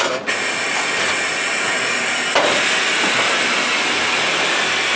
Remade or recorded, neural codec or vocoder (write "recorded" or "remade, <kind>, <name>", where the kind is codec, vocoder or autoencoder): recorded